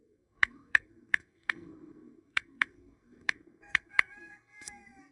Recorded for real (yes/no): no